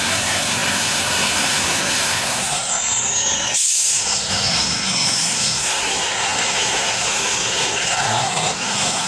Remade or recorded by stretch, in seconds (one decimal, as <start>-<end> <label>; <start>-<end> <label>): 0.0-9.1 remade